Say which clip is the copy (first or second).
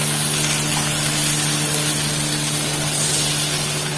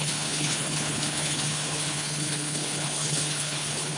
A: second